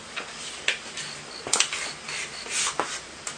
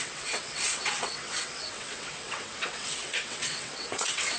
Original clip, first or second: first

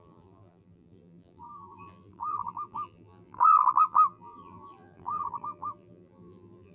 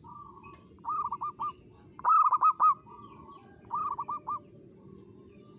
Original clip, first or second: second